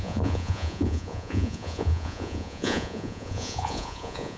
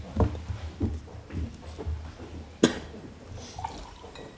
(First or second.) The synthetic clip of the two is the first